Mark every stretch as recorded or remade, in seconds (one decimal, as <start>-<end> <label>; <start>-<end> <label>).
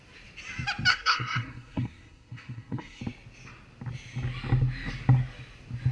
0.0-0.9 recorded; 0.9-3.0 remade; 3.0-5.9 recorded